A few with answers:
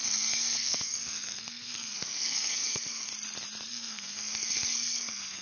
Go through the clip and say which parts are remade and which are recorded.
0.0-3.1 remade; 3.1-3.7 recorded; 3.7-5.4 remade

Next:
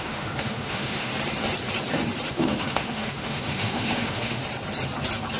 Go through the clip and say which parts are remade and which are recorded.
0.0-1.1 remade; 1.1-2.3 recorded; 2.3-4.4 remade; 4.4-5.4 recorded

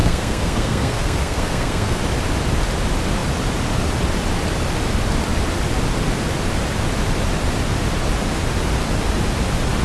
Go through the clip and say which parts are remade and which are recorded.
0.0-2.0 remade; 2.0-9.8 recorded

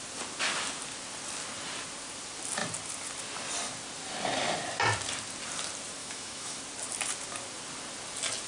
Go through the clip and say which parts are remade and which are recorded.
0.0-6.0 recorded; 6.0-6.6 remade; 6.6-8.5 recorded

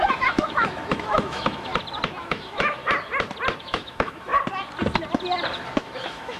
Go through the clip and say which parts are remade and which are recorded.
0.0-1.7 remade; 1.7-2.2 recorded; 2.2-2.8 remade; 2.8-3.6 recorded; 3.6-4.3 remade; 4.3-5.7 recorded; 5.7-6.4 remade